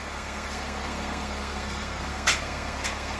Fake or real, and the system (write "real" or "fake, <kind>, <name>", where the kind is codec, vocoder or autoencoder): fake, codec, SNAC